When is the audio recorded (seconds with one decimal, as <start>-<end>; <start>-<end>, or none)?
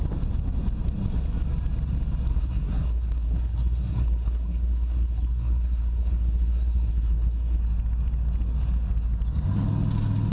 0.0-2.3; 7.6-10.3